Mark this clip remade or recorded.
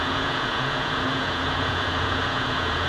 remade